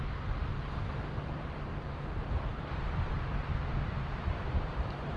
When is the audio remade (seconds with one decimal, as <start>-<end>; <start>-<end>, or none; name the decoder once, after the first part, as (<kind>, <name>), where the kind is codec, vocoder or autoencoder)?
0.0-5.2 (vocoder, BigVGAN v2)

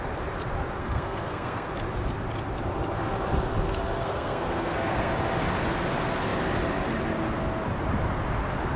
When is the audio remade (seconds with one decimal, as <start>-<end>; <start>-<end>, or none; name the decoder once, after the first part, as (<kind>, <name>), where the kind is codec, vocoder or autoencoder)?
0.8-1.7 (codec, SNAC); 4.0-5.1

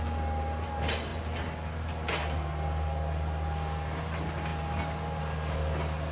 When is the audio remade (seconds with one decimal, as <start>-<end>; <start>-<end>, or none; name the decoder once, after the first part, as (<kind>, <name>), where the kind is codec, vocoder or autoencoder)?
none

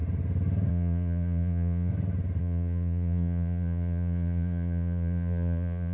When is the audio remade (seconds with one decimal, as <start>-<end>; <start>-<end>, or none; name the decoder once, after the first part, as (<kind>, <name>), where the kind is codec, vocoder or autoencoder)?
0.7-1.9 (vocoder, Vocos); 2.4-5.9

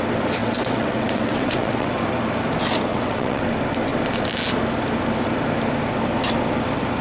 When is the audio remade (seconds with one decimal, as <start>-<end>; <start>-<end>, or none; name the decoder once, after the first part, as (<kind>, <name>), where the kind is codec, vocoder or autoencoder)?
0.4-2.0 (vocoder, WaveNeXt); 2.9-3.4